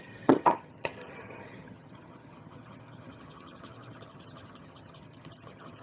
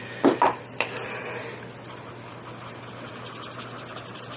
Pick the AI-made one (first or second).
first